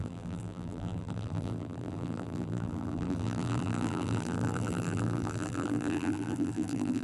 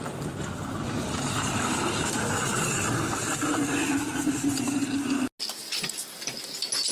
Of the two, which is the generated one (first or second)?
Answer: first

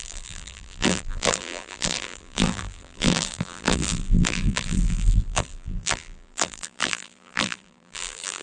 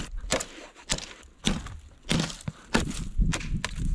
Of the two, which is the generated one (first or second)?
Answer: first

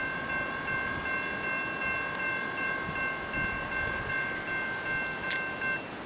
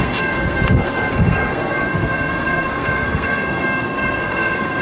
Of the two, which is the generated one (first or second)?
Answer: second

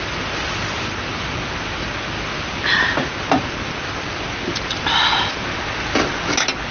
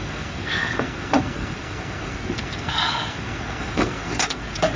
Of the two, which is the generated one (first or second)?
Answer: second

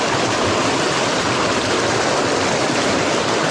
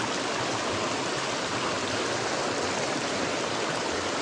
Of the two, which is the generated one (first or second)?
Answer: first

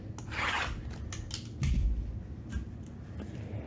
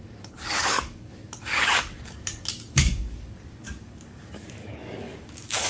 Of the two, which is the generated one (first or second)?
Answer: second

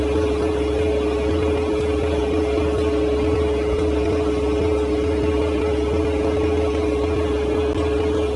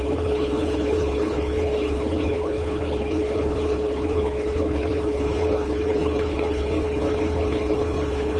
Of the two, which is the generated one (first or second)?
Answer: second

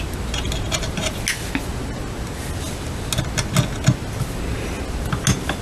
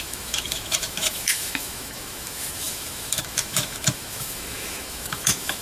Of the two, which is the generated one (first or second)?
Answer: second